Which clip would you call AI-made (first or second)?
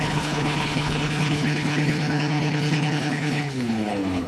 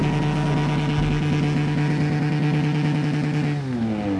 first